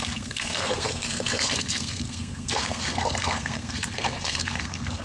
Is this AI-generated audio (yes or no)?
yes